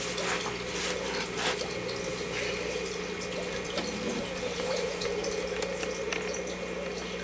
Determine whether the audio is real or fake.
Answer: real